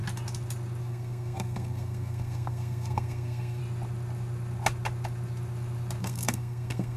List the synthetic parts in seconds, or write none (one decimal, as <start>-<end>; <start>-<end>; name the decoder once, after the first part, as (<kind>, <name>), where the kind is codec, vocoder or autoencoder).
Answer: 0.8-3.6 (codec, SNAC); 6.0-7.0